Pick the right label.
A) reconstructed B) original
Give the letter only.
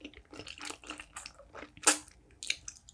B